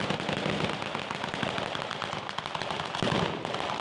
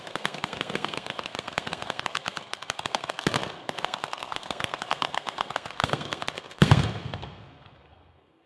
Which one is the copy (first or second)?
second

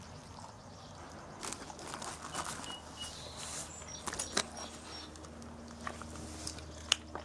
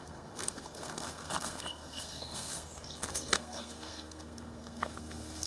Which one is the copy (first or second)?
second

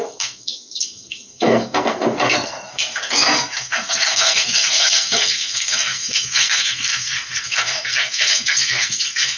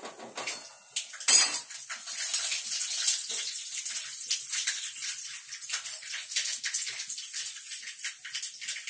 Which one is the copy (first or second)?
first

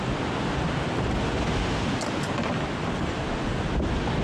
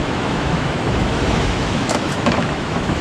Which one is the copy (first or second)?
second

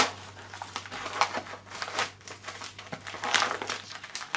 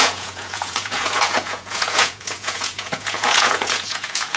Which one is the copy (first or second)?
second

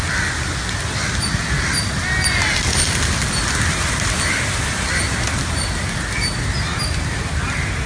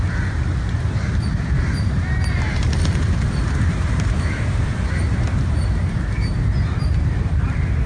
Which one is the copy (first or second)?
second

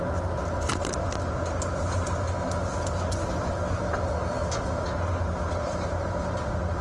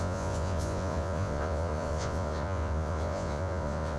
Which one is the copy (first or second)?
second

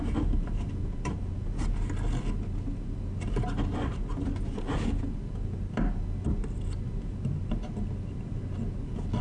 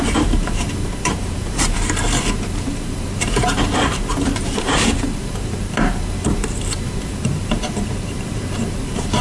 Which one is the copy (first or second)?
second